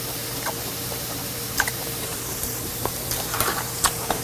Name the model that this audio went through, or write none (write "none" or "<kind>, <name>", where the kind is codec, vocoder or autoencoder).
vocoder, BigVGAN v2